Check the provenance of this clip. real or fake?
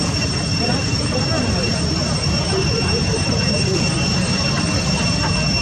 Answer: real